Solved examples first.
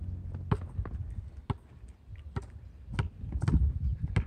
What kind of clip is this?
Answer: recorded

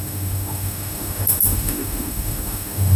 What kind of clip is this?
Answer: remade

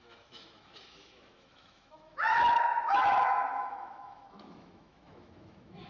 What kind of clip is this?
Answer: remade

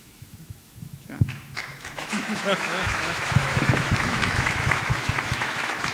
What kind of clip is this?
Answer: remade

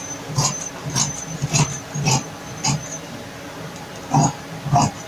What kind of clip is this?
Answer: recorded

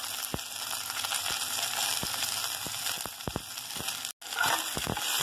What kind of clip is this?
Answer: recorded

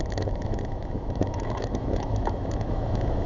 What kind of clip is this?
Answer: remade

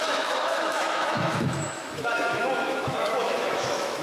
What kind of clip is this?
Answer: remade